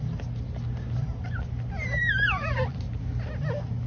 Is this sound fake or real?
real